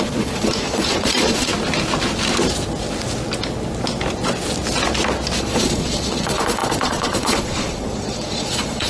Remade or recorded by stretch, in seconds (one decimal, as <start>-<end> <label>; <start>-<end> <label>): 0.0-1.5 remade; 1.5-5.4 recorded; 5.4-8.9 remade